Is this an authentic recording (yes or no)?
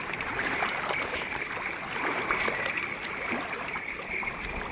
no